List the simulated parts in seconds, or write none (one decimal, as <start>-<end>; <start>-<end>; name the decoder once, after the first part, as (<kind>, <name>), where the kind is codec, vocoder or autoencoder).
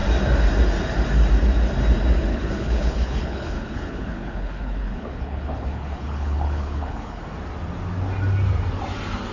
2.3-7.2 (codec, HILCodec)